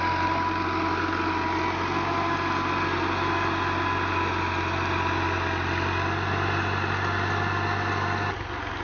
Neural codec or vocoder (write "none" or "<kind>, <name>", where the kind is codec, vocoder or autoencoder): none